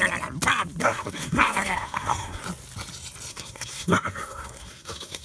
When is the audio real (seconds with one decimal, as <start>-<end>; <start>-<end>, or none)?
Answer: 0.0-0.8; 2.4-3.3